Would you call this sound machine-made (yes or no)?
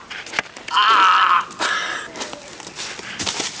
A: no